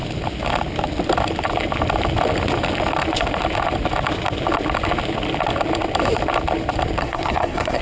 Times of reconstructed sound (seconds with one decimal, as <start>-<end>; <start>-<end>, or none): 7.0-7.8